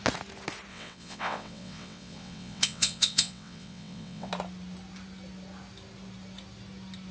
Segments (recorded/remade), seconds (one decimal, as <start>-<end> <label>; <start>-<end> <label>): 0.0-0.7 recorded; 0.7-4.3 remade; 4.3-7.1 recorded